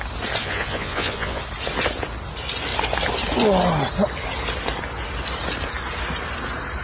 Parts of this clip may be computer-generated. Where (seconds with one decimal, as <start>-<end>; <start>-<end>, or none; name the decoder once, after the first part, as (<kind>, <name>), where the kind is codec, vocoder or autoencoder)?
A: 0.4-1.4 (vocoder, Vocos)